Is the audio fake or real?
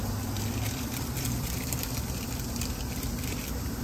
fake